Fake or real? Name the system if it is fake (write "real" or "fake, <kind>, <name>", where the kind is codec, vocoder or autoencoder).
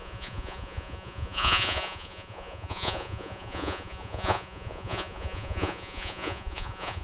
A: fake, vocoder, Vocos